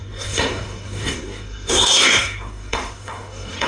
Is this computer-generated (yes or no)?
yes